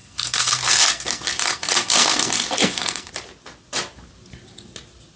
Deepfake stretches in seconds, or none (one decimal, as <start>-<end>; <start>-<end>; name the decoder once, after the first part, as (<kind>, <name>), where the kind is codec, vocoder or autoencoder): 0.0-3.1 (codec, SNAC)